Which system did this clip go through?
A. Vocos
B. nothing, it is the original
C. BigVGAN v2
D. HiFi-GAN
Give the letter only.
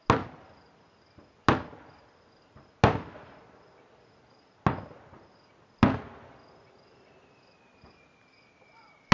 B